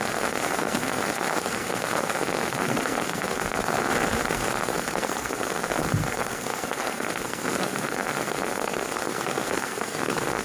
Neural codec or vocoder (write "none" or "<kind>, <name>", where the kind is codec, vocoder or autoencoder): codec, SNAC